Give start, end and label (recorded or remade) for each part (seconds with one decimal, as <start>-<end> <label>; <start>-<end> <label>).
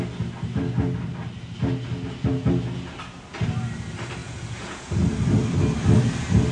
0.0-4.2 recorded; 4.2-4.9 remade; 4.9-6.5 recorded